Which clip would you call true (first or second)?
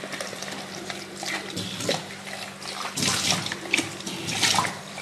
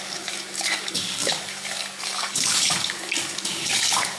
first